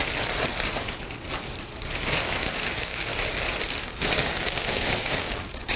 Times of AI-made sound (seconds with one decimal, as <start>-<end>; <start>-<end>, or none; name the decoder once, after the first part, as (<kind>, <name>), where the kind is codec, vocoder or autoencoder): 2.3-3.1 (codec, DAC); 3.8-5.8